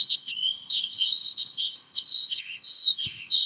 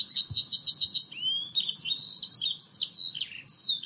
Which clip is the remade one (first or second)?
first